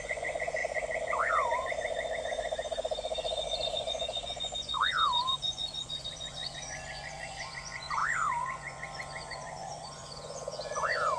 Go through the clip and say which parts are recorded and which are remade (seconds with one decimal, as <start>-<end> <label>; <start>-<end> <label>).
0.0-11.2 remade